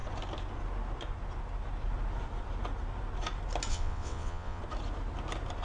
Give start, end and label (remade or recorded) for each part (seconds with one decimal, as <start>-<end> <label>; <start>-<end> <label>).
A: 0.0-3.7 recorded; 3.7-4.6 remade; 4.6-5.6 recorded